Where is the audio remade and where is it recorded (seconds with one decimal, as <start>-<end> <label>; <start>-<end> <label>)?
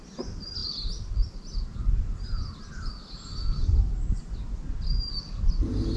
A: 0.0-6.0 recorded